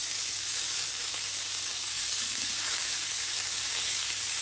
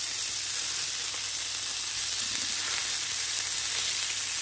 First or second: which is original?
second